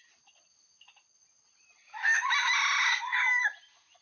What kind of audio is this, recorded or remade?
recorded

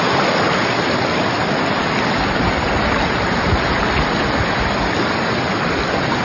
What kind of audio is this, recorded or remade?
recorded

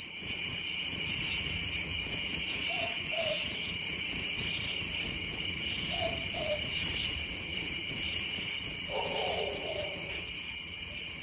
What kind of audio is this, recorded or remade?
remade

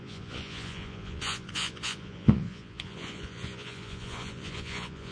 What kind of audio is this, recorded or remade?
remade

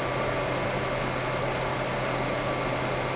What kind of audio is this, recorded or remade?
recorded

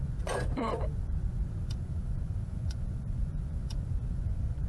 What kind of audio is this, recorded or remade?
remade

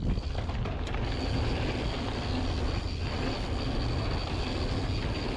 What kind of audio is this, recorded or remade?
recorded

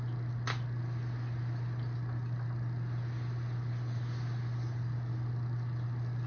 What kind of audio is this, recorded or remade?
recorded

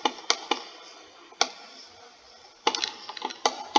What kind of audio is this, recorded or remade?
recorded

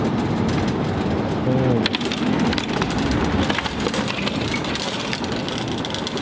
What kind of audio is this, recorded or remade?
recorded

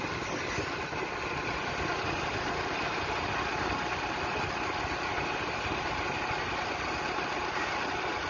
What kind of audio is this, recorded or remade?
recorded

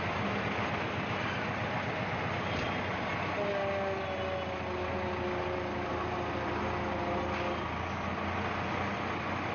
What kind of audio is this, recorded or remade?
recorded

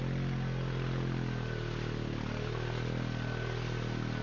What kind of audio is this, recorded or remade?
recorded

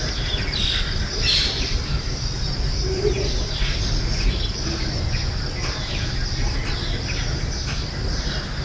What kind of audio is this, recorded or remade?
recorded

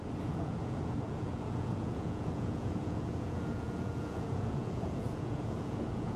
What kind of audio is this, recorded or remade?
remade